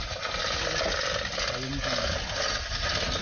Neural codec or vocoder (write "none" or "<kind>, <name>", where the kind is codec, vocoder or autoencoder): none